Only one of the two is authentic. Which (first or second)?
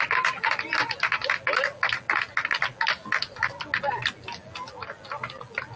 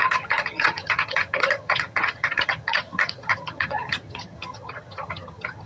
first